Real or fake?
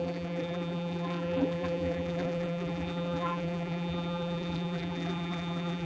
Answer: fake